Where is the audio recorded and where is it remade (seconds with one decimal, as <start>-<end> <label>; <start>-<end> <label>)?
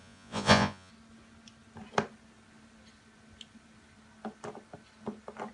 0.0-0.9 remade; 0.9-5.5 recorded